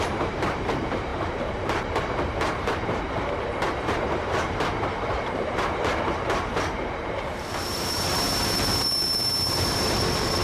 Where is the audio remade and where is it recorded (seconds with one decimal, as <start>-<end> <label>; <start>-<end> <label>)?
0.0-10.4 remade